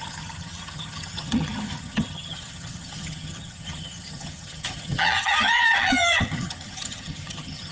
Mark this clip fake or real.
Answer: fake